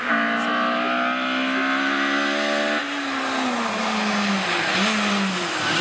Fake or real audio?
real